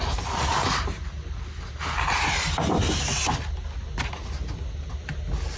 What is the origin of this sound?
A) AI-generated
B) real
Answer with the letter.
B